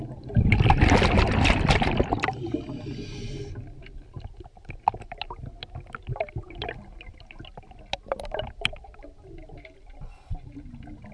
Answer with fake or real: real